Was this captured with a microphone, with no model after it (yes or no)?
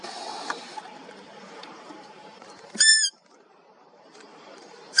no